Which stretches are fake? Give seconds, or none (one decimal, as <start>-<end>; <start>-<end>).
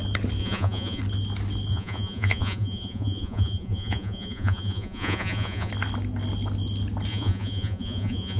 0.4-1.0; 1.7-5.7; 7.1-8.4